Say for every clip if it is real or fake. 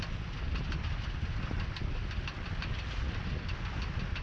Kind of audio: real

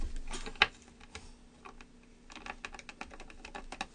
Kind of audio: real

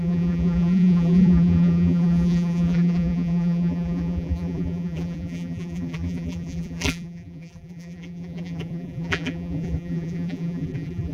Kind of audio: fake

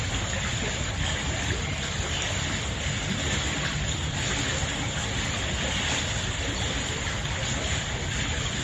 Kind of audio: real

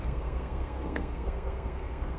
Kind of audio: fake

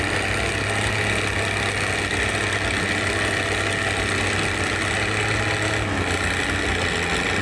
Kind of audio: real